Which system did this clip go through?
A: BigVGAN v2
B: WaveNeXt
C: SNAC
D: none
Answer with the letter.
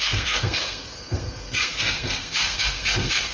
C